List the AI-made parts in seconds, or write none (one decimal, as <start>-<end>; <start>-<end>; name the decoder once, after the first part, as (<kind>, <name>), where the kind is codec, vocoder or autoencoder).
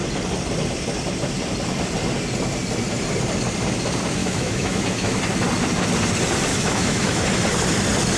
4.2-5.2 (autoencoder, DAC-VAE); 6.5-7.2